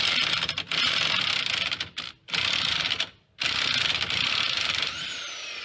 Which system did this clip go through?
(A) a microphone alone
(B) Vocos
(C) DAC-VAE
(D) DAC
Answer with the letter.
A